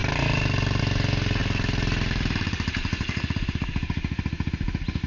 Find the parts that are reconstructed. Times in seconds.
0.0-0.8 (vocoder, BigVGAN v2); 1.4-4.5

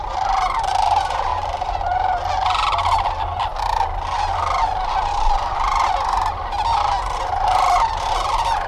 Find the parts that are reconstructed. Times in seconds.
0.0-1.3 (vocoder, BigVGAN v2); 3.1-3.5; 6.8-8.7

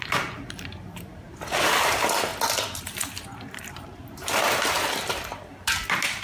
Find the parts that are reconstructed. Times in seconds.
0.0-2.3 (vocoder, BigVGAN v2); 2.8-6.2

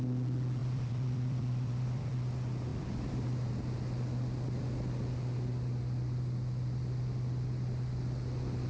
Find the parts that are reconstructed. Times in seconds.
0.6-2.1 (vocoder, BigVGAN v2); 2.7-3.5

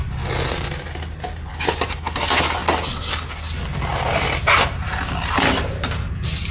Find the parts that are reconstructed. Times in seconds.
none

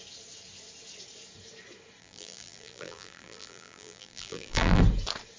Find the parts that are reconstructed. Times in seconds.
2.0-4.8 (vocoder, BigVGAN v2)

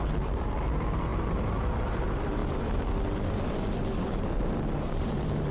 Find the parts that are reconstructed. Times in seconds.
0.0-5.5 (vocoder, BigVGAN v2)

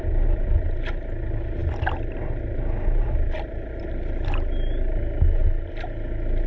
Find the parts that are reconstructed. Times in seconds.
none